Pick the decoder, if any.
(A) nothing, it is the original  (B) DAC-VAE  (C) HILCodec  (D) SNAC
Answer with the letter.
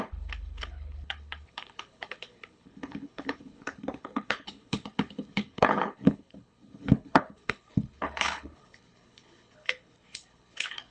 C